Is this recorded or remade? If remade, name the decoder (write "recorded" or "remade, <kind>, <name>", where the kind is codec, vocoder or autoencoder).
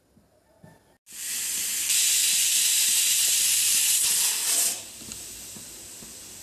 recorded